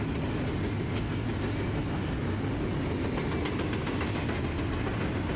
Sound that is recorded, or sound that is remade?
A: recorded